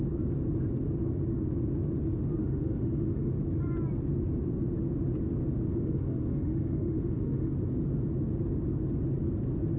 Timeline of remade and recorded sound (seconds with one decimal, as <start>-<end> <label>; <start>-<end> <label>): 0.0-2.4 recorded; 2.4-3.3 remade; 3.3-5.7 recorded; 5.7-7.5 remade; 7.5-9.8 recorded